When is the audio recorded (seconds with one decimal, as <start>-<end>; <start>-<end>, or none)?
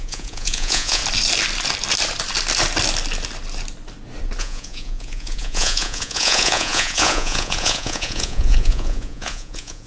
1.0-4.4